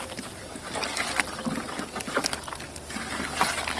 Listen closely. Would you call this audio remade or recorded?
recorded